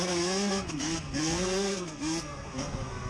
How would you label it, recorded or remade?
remade